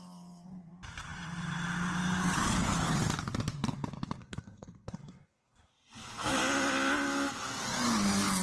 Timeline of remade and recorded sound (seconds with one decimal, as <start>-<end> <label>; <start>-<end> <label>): 0.0-4.2 recorded; 4.2-5.7 remade; 5.7-8.4 recorded